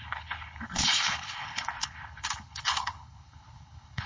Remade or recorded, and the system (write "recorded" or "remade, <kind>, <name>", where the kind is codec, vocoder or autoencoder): remade, codec, HILCodec